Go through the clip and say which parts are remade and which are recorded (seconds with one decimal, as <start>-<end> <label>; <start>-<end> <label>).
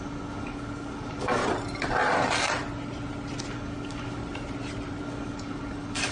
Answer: 0.0-1.4 remade; 1.4-3.5 recorded; 3.5-4.2 remade; 4.2-5.0 recorded; 5.0-6.1 remade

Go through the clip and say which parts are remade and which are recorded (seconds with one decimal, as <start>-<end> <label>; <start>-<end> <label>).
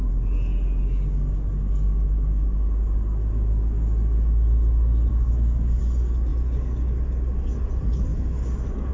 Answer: 0.0-5.1 recorded; 5.1-5.8 remade; 5.8-8.9 recorded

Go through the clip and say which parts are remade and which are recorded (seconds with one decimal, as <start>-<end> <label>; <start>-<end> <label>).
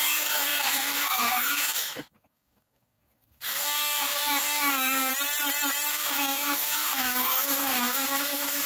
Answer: 0.0-5.1 remade; 5.1-5.9 recorded; 5.9-8.7 remade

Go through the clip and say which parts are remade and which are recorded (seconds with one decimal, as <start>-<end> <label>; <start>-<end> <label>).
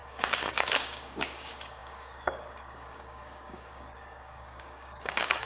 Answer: 0.0-5.5 remade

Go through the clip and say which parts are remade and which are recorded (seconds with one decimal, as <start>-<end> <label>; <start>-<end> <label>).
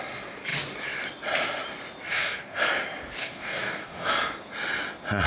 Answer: 0.0-2.1 recorded; 2.1-2.6 remade; 2.6-3.2 recorded; 3.2-4.1 remade; 4.1-5.3 recorded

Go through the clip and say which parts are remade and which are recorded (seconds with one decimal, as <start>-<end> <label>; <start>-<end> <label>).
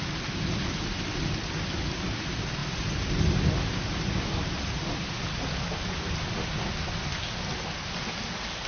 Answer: 0.0-8.7 recorded